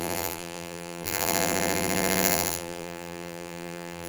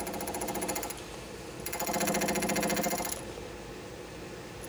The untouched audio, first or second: second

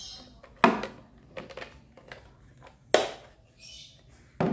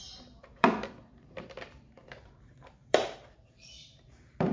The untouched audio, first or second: first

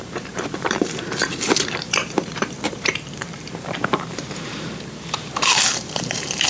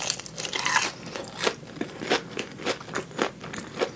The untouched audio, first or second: second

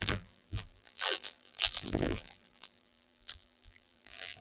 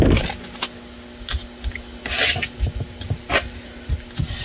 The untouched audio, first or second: second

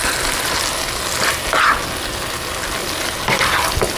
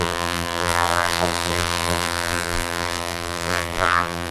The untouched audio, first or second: first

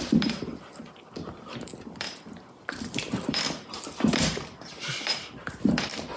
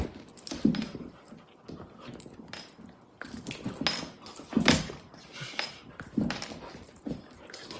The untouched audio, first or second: second